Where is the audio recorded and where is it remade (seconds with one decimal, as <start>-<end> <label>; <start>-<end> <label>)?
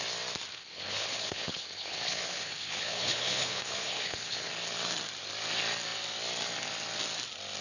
0.0-0.5 recorded; 0.5-4.5 remade; 4.5-7.6 recorded